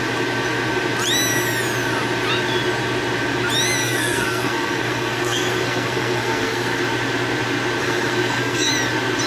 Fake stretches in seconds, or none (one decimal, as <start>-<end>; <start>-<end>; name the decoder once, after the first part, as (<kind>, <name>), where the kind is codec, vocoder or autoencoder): 3.8-6.8 (codec, SNAC); 7.8-8.7